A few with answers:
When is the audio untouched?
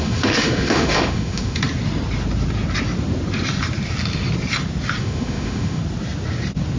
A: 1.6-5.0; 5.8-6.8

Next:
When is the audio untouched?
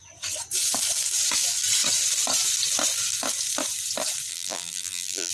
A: 0.0-4.3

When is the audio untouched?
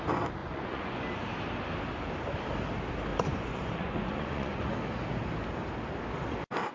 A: 0.0-0.4; 1.0-3.1; 4.7-6.7